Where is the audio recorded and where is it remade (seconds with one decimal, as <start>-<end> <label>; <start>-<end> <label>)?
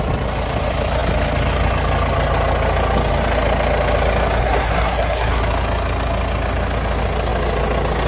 0.0-4.4 recorded; 4.4-5.4 remade; 5.4-8.1 recorded